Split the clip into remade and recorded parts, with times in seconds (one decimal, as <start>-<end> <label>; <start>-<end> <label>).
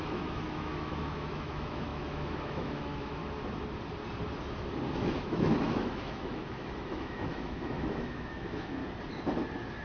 0.0-3.2 remade; 3.2-4.9 recorded; 4.9-8.8 remade; 8.8-9.8 recorded